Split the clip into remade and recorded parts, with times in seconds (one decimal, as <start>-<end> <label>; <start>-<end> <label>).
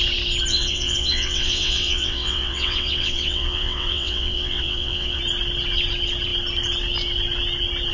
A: 0.0-0.5 recorded; 0.5-5.2 remade; 5.2-7.9 recorded